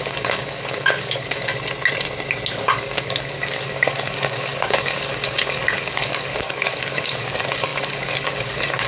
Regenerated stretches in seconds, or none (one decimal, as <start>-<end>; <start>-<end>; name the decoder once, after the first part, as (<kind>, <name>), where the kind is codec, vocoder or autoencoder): 0.0-1.5 (codec, DAC); 2.5-8.9